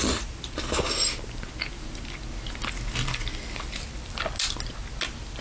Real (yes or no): yes